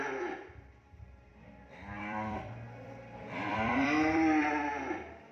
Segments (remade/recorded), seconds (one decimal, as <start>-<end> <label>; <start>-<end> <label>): 0.0-5.3 remade

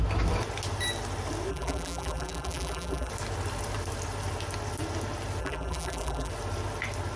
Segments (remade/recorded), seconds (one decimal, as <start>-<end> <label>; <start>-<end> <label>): 0.0-1.5 recorded; 1.5-3.1 remade; 3.1-5.4 recorded; 5.4-6.3 remade; 6.3-7.2 recorded

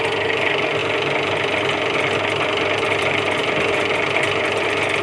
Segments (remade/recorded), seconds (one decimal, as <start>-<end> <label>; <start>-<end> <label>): 0.0-0.8 recorded; 0.8-3.0 remade; 3.0-3.4 recorded; 3.4-4.4 remade; 4.4-5.0 recorded

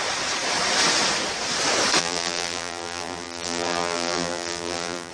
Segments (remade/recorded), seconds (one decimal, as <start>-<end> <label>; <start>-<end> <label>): 0.0-2.0 recorded; 2.0-5.1 remade

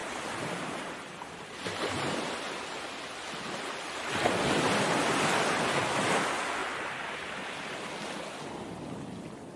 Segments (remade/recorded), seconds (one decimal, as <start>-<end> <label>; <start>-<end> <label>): 0.0-9.6 recorded

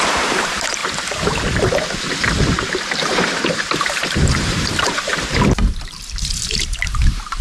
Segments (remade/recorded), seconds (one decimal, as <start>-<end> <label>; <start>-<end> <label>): 0.0-0.8 remade; 0.8-2.8 recorded; 2.8-5.1 remade; 5.1-6.5 recorded; 6.5-7.4 remade